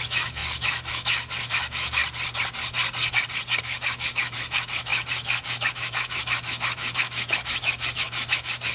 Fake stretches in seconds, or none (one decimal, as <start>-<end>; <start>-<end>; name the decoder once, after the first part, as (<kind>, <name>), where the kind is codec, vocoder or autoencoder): 0.0-2.0 (autoencoder, DAC-VAE); 3.6-8.7